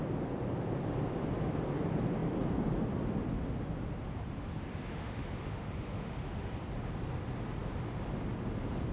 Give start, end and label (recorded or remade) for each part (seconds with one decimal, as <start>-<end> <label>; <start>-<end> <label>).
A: 0.0-4.9 recorded; 4.9-6.5 remade; 6.5-8.9 recorded